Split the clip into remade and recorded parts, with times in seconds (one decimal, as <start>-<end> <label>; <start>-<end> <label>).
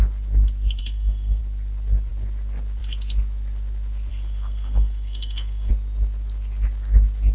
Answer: 0.0-0.8 recorded; 0.8-1.4 remade; 1.4-4.1 recorded; 4.1-5.7 remade; 5.7-7.3 recorded